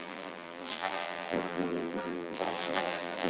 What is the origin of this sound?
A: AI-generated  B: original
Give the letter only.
A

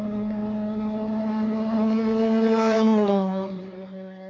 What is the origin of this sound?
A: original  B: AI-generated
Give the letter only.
B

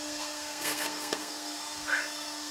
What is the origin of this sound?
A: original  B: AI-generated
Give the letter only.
B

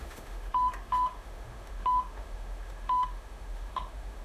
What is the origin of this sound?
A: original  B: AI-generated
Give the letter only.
B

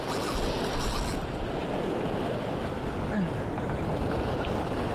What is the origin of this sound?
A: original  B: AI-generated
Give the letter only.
A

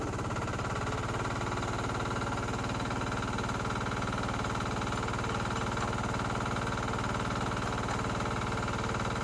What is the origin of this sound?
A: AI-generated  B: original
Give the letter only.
B